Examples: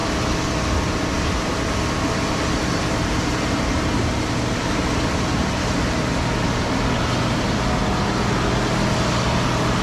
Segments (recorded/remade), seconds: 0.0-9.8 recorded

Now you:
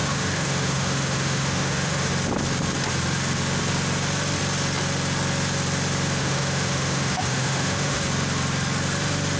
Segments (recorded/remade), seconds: 0.0-2.1 remade; 2.1-6.2 recorded; 6.2-8.0 remade; 8.0-9.4 recorded

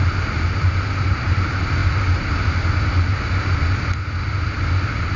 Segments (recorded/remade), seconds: 0.0-1.8 remade; 1.8-5.2 recorded

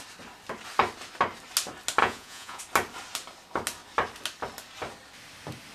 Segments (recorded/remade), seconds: 0.0-2.0 recorded; 2.0-2.6 remade; 2.6-5.7 recorded

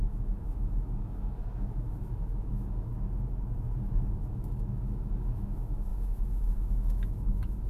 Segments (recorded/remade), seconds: 0.0-2.9 remade; 2.9-4.1 recorded; 4.1-7.7 remade

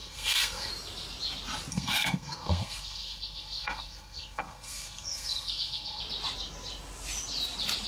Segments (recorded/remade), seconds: 0.0-0.7 remade; 0.7-1.7 recorded; 1.7-6.0 remade; 6.0-7.9 recorded

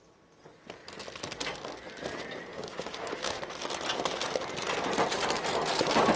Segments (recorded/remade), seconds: 0.0-2.5 recorded; 2.5-3.4 remade; 3.4-6.2 recorded